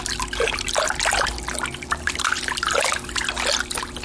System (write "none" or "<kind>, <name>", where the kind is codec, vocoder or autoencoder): none